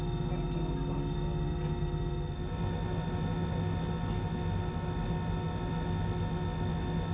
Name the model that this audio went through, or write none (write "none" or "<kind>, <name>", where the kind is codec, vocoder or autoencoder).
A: none